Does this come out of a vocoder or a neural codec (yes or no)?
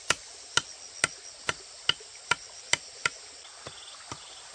no